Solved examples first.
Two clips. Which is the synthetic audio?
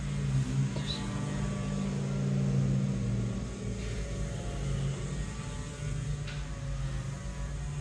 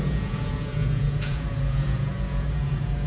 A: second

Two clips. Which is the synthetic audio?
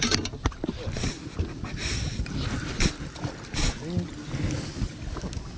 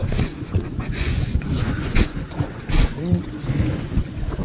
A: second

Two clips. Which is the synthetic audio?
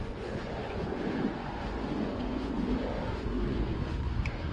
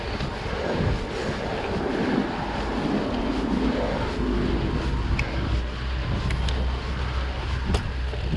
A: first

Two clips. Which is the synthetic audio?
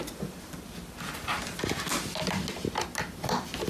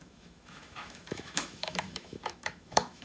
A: second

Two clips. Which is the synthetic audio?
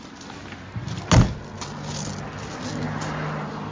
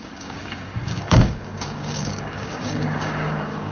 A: second